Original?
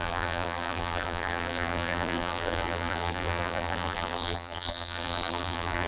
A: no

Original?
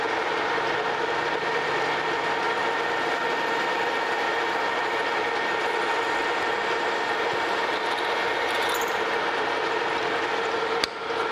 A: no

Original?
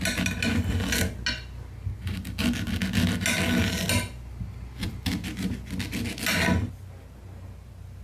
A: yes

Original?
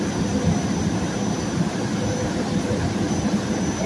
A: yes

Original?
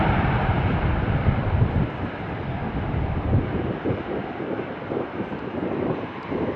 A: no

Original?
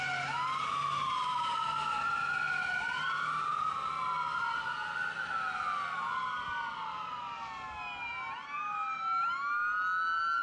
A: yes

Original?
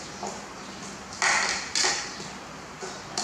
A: yes